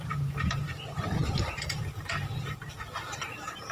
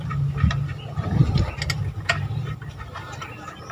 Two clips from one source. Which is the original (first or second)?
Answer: second